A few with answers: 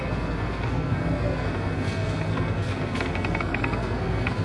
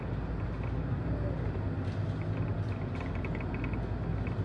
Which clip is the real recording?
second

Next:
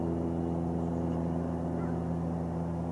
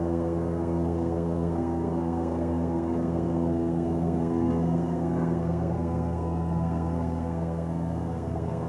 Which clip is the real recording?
first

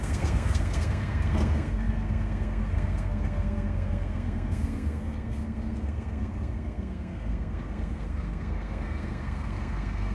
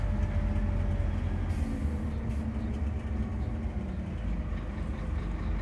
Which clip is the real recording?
second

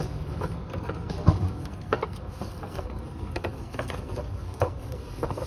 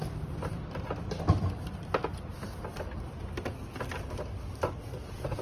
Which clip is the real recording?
second